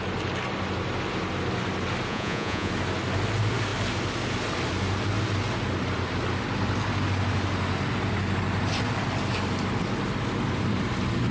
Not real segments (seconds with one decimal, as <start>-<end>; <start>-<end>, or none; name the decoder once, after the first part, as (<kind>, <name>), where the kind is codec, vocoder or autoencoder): 2.1-2.7 (vocoder, Vocos)